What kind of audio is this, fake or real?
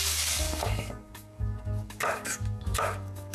fake